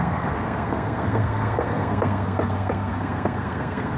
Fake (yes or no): yes